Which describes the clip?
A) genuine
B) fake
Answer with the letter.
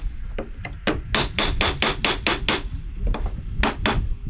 A